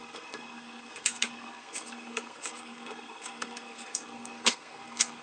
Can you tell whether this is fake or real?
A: fake